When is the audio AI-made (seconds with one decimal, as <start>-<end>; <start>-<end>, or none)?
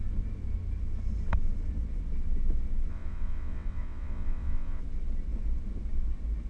2.9-4.8